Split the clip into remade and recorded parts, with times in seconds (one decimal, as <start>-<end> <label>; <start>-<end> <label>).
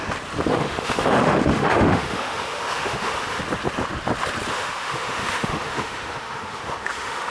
0.0-0.5 recorded; 0.5-3.4 remade; 3.4-4.5 recorded; 4.5-7.3 remade